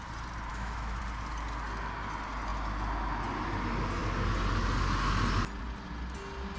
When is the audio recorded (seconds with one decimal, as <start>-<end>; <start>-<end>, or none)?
0.0-0.5; 1.0-6.6